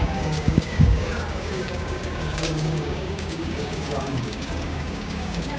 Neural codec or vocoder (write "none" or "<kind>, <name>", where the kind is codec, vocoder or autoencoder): codec, DAC